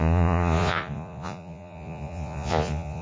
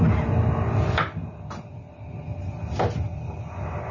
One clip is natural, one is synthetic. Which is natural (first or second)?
second